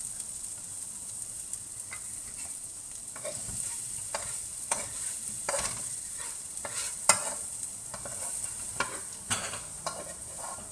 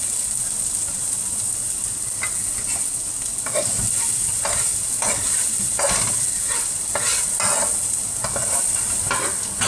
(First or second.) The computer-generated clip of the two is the first